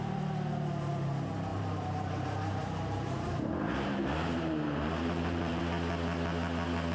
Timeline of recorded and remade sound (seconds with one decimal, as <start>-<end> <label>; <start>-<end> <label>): 0.0-1.5 recorded; 1.5-5.6 remade; 5.6-6.9 recorded